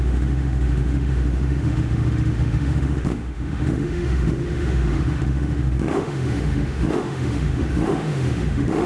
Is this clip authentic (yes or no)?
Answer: no